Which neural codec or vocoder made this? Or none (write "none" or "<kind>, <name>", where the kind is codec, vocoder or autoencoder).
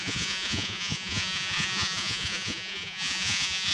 vocoder, Vocos